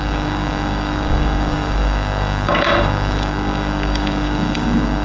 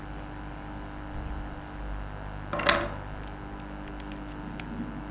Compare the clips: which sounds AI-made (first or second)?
first